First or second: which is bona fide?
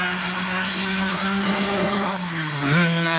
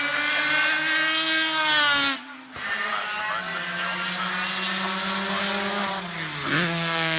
second